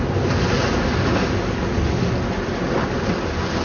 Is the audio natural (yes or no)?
yes